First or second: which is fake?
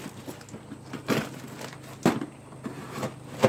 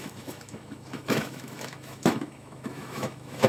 second